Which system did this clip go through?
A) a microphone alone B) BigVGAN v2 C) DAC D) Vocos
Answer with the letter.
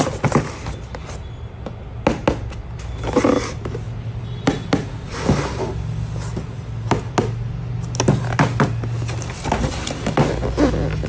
A